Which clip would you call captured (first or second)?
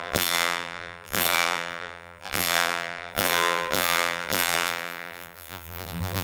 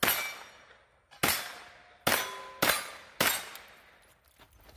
second